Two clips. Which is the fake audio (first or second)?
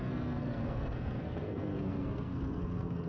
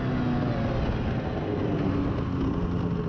first